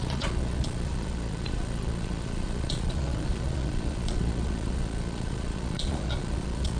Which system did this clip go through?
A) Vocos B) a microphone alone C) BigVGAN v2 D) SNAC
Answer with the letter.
A